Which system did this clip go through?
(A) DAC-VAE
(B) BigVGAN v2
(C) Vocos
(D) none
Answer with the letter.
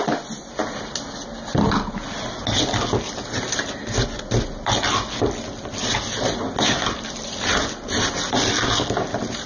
D